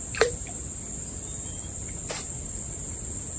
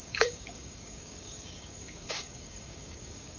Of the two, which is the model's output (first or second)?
second